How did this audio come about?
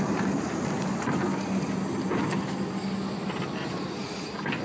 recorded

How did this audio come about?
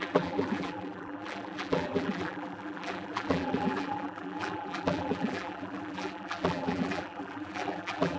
remade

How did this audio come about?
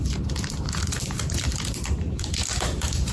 remade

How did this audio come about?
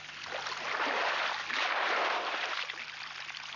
recorded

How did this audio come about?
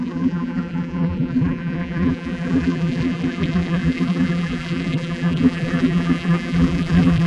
remade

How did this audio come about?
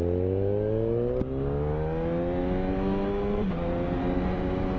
recorded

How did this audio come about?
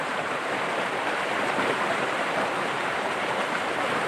remade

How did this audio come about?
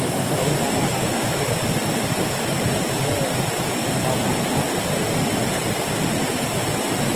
recorded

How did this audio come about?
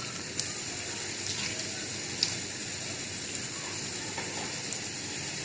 recorded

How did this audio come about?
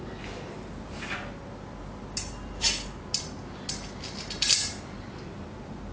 recorded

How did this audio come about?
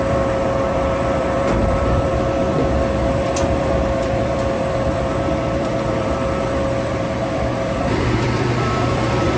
remade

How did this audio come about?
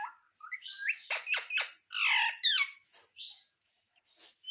recorded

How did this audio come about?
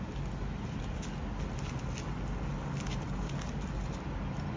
recorded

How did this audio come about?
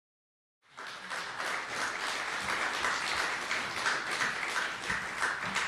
recorded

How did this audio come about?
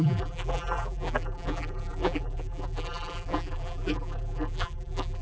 remade